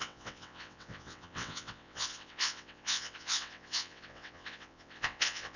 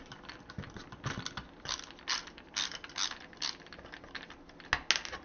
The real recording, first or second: second